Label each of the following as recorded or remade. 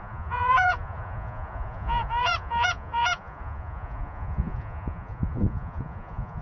remade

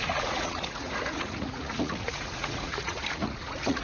remade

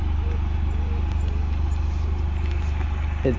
recorded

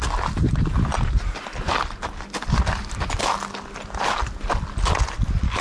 recorded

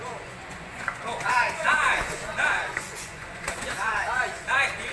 remade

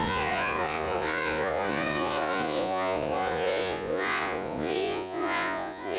remade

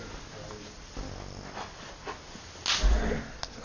recorded